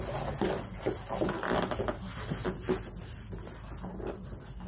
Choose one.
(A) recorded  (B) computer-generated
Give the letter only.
A